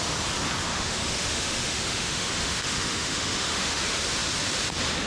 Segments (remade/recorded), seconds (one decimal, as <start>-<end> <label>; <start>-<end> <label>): 0.0-0.7 recorded; 0.7-3.8 remade; 3.8-5.1 recorded

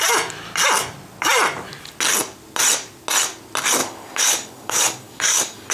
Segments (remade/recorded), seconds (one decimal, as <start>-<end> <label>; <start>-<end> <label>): 0.0-3.8 recorded; 3.8-5.7 remade

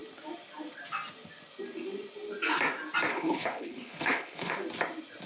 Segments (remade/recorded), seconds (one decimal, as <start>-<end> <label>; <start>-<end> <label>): 0.0-3.1 recorded; 3.1-4.5 remade; 4.5-5.3 recorded

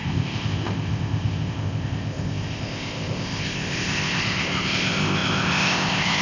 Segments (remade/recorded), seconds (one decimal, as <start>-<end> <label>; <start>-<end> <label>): 0.0-6.2 remade

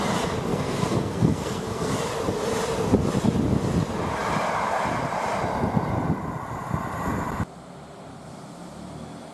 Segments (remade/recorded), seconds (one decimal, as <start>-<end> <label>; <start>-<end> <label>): 0.0-0.5 recorded; 0.5-1.9 remade; 1.9-9.3 recorded

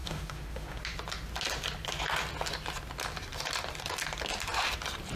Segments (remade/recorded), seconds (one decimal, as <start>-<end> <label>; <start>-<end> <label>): 0.0-0.8 remade; 0.8-5.2 recorded

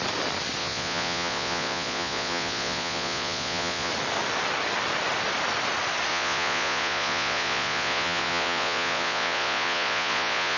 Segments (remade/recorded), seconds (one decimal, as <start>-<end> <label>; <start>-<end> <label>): 0.0-0.6 recorded; 0.6-3.9 remade; 3.9-6.1 recorded; 6.1-10.6 remade